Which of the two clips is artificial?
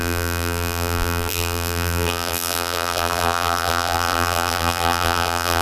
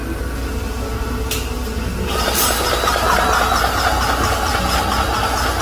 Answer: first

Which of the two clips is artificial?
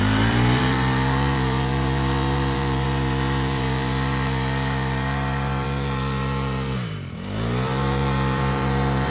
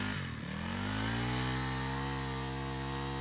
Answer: first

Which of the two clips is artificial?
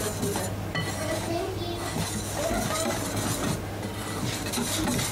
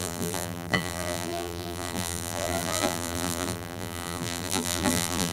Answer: second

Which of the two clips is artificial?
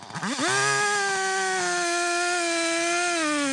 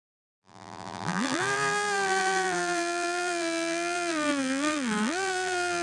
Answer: second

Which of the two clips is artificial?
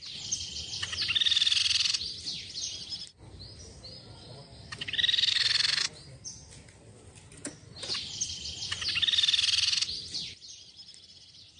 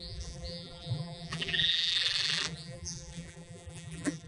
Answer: second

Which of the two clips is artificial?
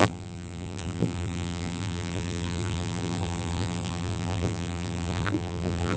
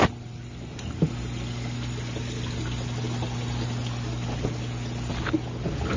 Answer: first